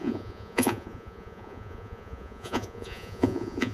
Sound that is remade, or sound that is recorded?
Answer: remade